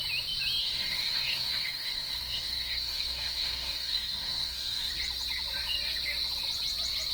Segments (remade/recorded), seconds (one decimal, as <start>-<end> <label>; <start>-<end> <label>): 0.0-0.6 recorded; 0.6-4.9 remade; 4.9-7.1 recorded